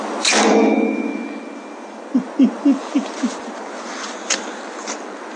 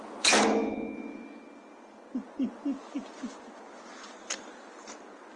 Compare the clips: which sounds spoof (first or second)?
first